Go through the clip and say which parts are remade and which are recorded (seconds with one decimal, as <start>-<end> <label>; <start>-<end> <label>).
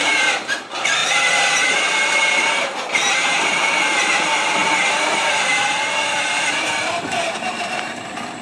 0.0-8.4 remade